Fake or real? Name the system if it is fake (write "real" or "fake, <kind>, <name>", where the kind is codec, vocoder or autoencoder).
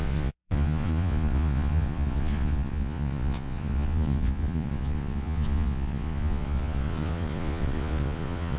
fake, vocoder, Vocos